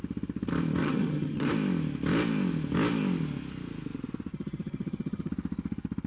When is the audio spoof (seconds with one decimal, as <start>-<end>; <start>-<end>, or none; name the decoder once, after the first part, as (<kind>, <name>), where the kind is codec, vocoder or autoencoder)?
0.8-1.5 (vocoder, HiFi-GAN); 4.3-5.3